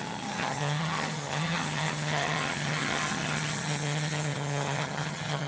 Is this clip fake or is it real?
fake